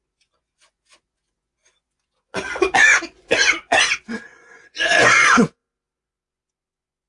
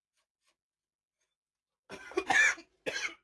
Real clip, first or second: second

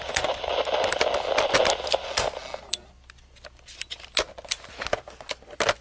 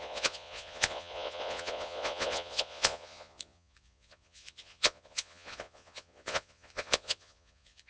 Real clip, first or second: first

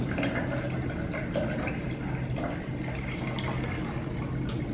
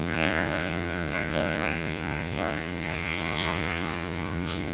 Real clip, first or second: first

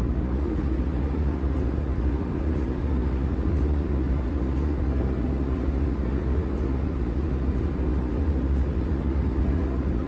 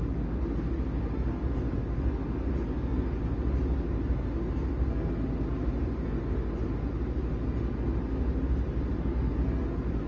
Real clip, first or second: second